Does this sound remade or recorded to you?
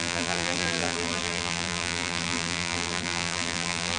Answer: remade